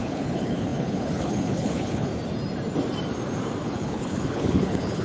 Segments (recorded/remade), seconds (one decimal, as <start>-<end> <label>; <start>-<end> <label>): 0.0-2.1 remade; 2.1-3.6 recorded; 3.6-5.0 remade